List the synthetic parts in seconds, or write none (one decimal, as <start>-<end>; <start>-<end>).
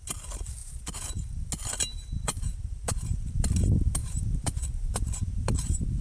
0.6-1.3; 2.5-3.5; 4.0-6.0